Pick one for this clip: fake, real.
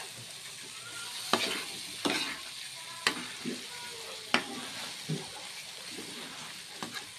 real